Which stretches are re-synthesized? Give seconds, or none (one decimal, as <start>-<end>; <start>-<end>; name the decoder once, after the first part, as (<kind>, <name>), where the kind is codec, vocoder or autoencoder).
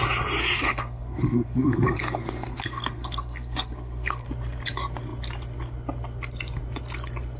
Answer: 0.4-4.3 (codec, SNAC)